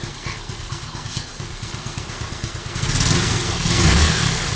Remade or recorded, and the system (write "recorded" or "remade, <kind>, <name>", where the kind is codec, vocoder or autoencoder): remade, codec, SNAC